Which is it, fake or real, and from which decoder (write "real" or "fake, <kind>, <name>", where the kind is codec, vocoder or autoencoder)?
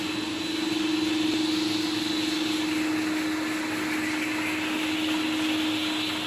real